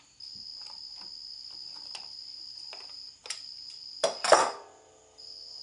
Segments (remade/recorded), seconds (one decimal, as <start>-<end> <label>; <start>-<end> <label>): 0.0-5.6 recorded